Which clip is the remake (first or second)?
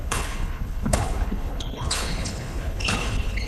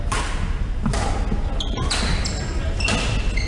first